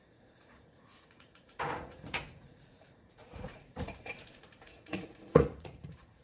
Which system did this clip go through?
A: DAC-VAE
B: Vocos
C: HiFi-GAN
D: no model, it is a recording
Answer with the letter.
B